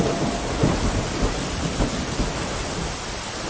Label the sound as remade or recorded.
recorded